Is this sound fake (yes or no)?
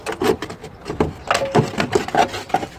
no